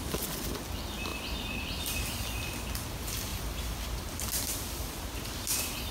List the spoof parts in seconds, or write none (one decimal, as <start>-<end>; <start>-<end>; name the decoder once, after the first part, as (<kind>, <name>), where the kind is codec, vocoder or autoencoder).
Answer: 3.3-4.1 (vocoder, BigVGAN v2)